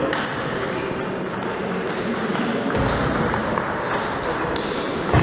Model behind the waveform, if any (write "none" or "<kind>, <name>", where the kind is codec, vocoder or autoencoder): vocoder, BigVGAN v2